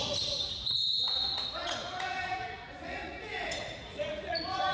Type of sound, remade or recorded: remade